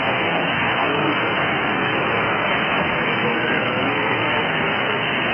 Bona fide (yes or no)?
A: no